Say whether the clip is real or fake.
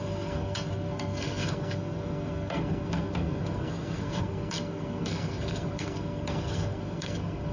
fake